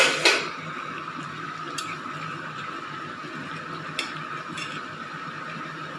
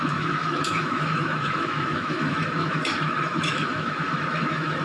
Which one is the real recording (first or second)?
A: first